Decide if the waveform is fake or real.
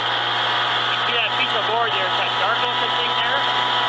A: real